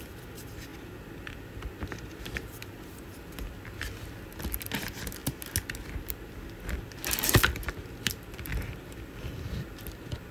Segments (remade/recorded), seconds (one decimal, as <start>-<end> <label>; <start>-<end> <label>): 0.0-10.3 recorded